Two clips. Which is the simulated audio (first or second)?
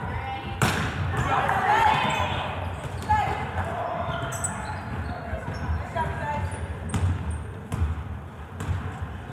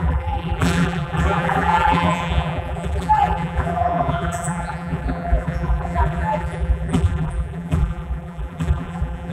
second